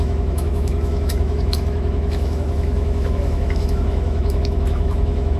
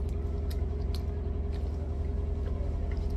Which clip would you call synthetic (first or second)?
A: first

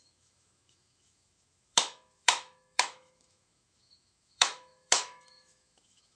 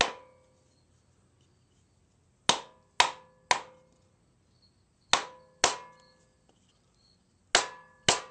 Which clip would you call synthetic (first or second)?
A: first